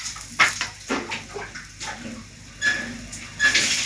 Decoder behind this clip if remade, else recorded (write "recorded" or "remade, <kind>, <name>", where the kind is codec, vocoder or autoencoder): recorded